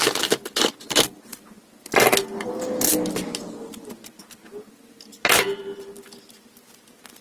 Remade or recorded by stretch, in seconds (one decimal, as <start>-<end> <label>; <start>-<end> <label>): 0.0-7.2 recorded